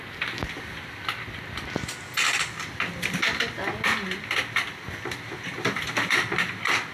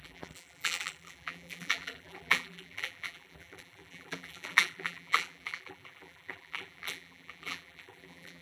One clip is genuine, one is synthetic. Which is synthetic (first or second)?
second